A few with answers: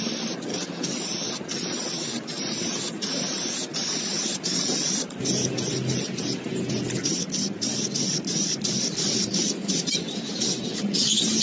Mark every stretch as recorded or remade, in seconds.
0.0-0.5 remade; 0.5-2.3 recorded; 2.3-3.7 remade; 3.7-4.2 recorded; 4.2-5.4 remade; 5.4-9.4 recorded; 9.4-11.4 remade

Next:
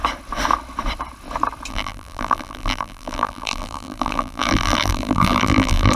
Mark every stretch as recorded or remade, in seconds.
0.0-1.7 recorded; 1.7-6.0 remade

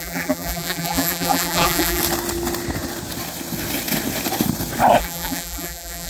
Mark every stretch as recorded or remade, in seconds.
0.0-2.0 remade; 2.0-5.0 recorded; 5.0-6.1 remade